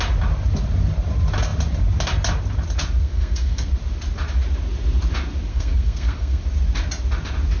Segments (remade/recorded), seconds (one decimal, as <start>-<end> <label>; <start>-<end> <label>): 0.0-3.0 recorded; 3.0-3.7 remade; 3.7-5.5 recorded; 5.5-6.4 remade; 6.4-7.6 recorded